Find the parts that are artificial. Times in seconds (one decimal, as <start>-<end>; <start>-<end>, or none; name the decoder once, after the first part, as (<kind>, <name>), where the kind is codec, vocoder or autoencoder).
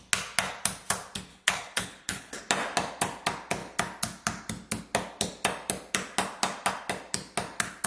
1.3-2.4 (codec, HILCodec)